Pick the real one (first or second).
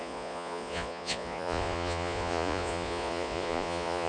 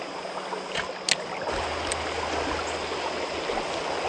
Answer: second